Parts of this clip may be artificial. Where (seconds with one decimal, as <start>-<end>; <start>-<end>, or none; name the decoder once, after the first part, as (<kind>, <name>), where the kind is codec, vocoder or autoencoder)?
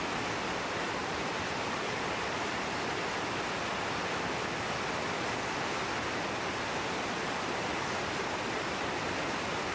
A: 1.0-2.3 (vocoder, BigVGAN v2)